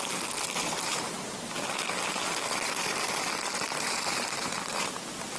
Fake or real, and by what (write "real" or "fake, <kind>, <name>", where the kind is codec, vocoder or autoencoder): fake, vocoder, BigVGAN v2